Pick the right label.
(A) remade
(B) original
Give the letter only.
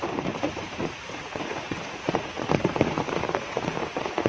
A